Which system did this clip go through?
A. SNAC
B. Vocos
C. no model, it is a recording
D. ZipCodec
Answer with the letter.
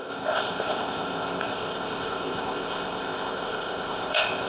D